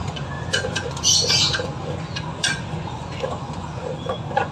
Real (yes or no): no